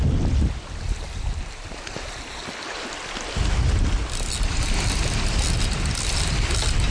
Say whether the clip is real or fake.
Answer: real